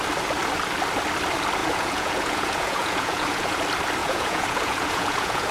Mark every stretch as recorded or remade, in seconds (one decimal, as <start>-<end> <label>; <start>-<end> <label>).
0.0-1.6 recorded; 1.6-3.6 remade; 3.6-4.0 recorded; 4.0-5.5 remade